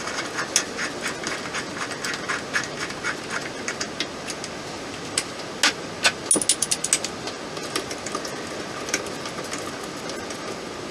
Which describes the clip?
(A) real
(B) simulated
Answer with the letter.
A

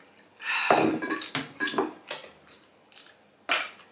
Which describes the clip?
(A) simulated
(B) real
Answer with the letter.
B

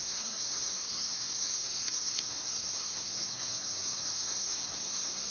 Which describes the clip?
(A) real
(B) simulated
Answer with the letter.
B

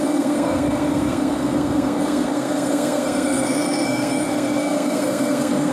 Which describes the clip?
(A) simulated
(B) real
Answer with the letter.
A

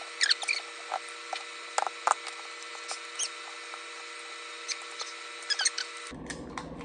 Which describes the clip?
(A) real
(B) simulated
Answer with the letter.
A